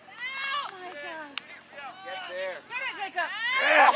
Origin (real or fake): real